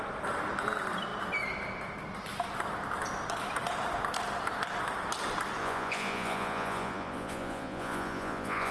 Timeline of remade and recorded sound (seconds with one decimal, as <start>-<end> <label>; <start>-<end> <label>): 0.0-5.6 recorded; 5.6-8.7 remade